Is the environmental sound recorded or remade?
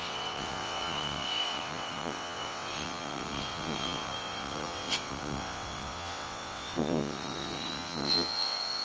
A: remade